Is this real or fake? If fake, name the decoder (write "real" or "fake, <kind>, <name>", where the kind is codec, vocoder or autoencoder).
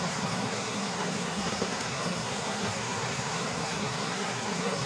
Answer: fake, codec, SNAC